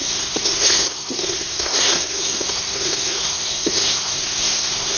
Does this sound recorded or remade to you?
remade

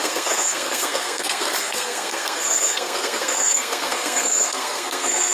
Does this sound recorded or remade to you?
remade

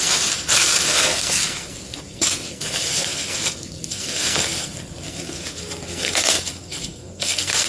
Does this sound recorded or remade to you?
remade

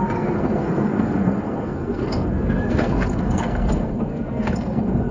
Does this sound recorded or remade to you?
remade